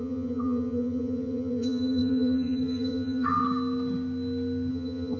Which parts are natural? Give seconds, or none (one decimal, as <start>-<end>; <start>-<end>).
3.4-4.7